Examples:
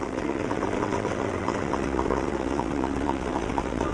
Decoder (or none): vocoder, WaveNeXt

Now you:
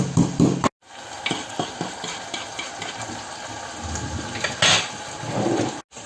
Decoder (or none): none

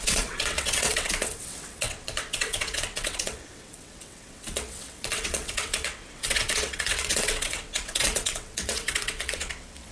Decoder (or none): vocoder, WaveNeXt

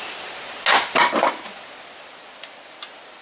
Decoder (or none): none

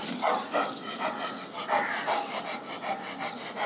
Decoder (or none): none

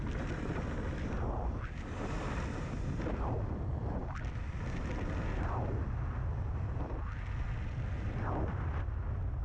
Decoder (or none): none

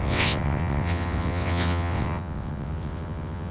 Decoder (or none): vocoder, WaveNeXt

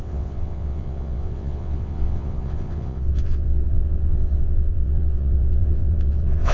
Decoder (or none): vocoder, WaveNeXt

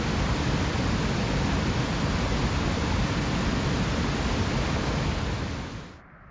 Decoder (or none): none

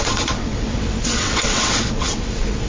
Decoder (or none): vocoder, WaveNeXt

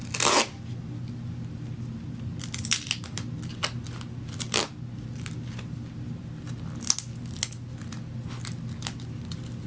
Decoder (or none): none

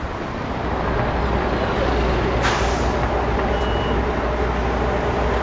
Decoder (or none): none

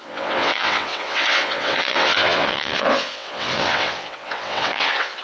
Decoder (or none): vocoder, WaveNeXt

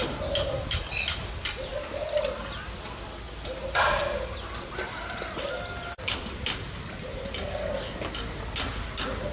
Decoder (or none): none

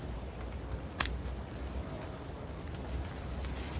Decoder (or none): none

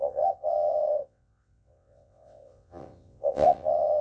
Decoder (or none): vocoder, WaveNeXt